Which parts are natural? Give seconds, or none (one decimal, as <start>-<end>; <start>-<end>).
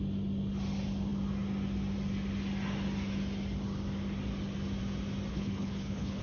0.0-5.3